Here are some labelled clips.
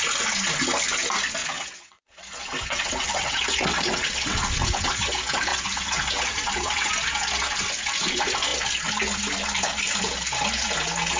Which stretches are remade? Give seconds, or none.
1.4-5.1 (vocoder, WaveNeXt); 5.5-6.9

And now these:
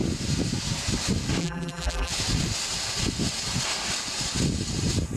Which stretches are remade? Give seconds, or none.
1.4-2.1 (vocoder, BigVGAN v2)